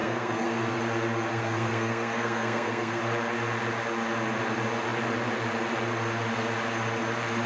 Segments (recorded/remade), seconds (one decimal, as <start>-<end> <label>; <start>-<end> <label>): 0.0-0.8 remade; 0.8-1.3 recorded; 1.3-3.0 remade; 3.0-7.5 recorded